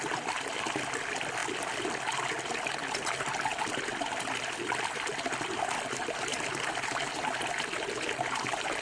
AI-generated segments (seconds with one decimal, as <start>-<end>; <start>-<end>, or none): 1.4-1.9; 3.5-6.7